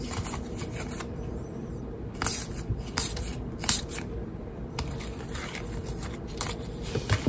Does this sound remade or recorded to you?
remade